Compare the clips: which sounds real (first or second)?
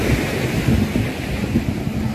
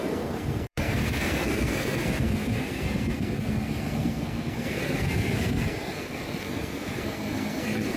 first